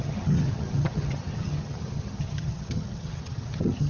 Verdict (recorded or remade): remade